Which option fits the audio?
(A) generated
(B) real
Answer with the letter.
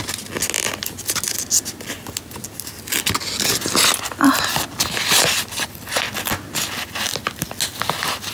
B